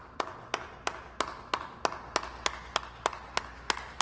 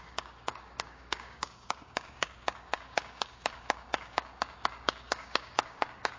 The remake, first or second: second